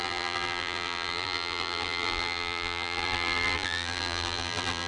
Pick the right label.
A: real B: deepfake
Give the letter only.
B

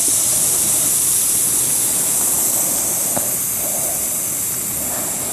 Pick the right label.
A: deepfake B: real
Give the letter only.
B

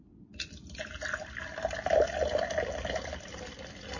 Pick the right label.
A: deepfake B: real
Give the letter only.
B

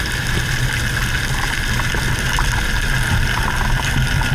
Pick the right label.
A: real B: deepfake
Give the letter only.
B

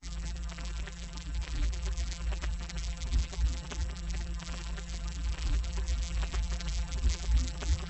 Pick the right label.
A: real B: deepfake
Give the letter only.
B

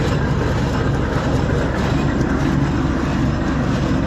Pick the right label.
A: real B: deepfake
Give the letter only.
A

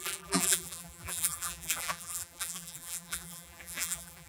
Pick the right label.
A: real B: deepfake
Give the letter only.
B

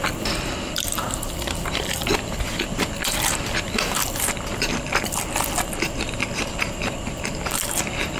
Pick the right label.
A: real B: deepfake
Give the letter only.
B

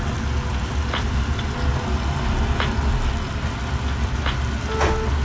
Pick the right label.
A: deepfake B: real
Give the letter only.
B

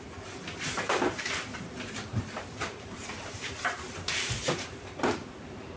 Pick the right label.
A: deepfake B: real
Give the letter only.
A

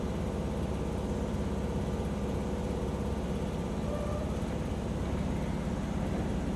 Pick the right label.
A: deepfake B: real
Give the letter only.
B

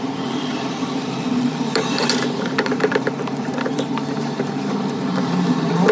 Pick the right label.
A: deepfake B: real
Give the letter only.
A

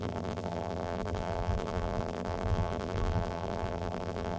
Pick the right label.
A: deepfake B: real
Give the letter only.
A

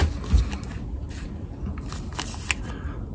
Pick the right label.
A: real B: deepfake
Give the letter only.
A